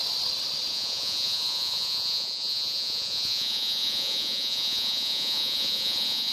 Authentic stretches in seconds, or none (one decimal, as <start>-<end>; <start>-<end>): 0.0-0.7